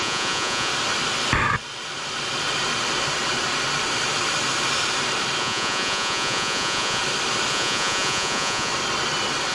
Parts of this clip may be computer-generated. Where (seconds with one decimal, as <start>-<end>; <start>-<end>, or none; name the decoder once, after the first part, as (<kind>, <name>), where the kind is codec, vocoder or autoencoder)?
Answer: 0.0-0.7 (vocoder, Vocos); 5.4-7.0; 7.5-8.7